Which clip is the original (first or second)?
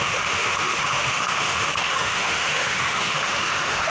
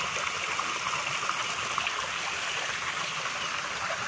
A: second